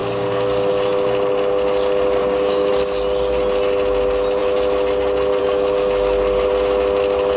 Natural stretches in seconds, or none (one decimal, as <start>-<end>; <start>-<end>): 0.0-2.2; 2.7-7.4